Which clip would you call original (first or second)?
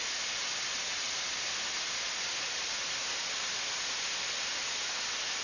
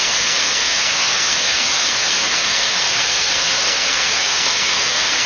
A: first